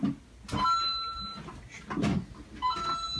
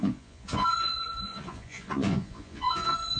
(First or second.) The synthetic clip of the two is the second